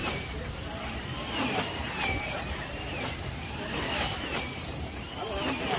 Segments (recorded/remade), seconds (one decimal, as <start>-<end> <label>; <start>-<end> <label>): 0.0-5.8 remade